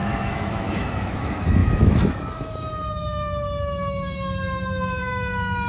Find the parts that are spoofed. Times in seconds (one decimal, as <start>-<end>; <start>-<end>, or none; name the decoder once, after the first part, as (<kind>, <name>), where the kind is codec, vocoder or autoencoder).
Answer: 0.0-5.7 (autoencoder, DAC-VAE)